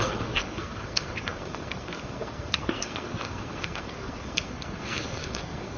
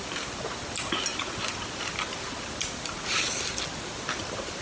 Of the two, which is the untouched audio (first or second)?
second